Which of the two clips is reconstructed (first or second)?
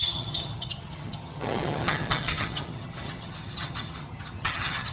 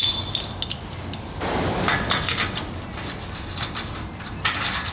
first